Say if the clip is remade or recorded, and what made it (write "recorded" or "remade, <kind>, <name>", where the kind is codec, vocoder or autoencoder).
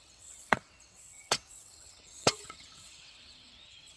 remade, vocoder, WaveNeXt